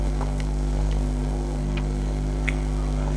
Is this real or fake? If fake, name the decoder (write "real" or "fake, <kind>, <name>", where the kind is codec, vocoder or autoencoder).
fake, codec, SNAC